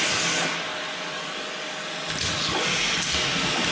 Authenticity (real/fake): real